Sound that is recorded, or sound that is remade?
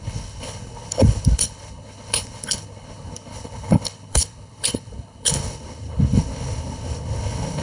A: remade